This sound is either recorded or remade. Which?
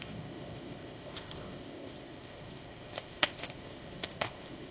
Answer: remade